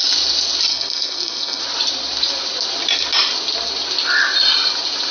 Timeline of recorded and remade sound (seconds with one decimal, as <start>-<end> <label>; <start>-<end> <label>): 0.0-0.7 recorded; 0.7-1.6 remade; 1.6-5.1 recorded